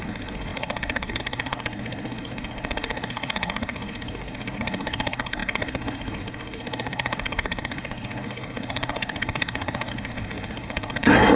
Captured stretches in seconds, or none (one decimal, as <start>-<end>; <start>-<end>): none